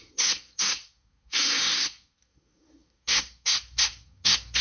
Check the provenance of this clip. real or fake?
fake